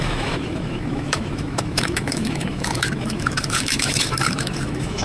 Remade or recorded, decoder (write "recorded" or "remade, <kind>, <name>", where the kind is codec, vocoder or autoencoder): remade, autoencoder, DAC-VAE